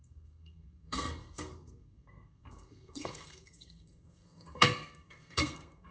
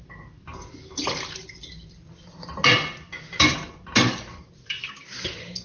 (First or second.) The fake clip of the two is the first